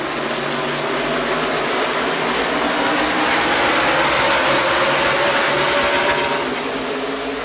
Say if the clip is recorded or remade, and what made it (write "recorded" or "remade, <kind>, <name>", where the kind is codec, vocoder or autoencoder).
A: recorded